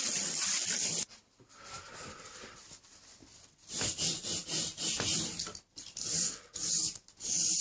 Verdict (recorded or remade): recorded